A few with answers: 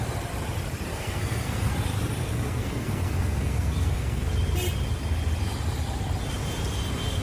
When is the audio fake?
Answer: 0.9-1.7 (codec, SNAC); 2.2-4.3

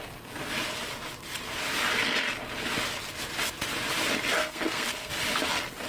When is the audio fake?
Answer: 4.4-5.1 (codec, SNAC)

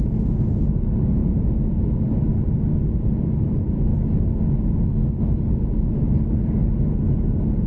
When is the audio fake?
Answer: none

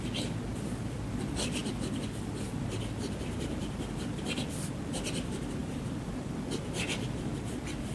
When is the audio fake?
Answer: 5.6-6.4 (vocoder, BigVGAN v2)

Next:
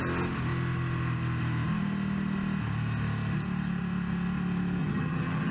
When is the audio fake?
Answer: 4.8-5.5 (vocoder, HiFi-GAN)

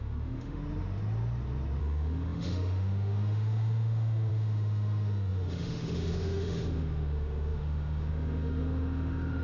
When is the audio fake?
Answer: 0.0-0.6 (autoencoder, DAC-VAE); 1.8-9.4

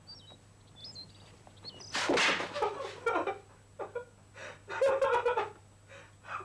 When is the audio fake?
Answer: 0.8-2.0 (vocoder, BigVGAN v2)

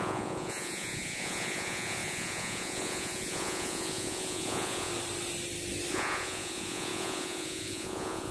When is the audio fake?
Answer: 0.0-4.9 (vocoder, Vocos); 5.9-8.3